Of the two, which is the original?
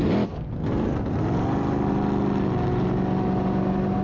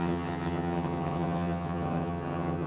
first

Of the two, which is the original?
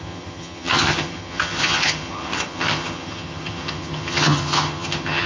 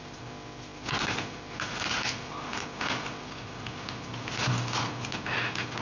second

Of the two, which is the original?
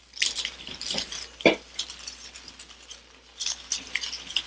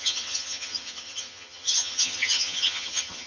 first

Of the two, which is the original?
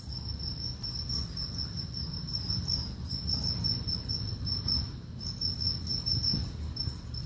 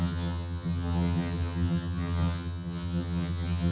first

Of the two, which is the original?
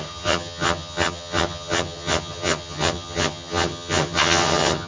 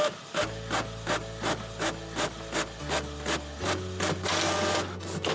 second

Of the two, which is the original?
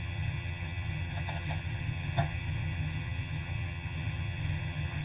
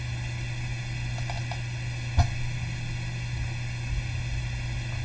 second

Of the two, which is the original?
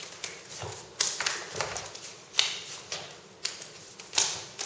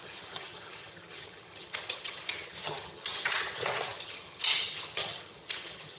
first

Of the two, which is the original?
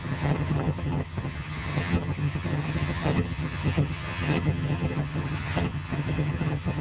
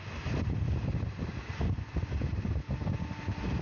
second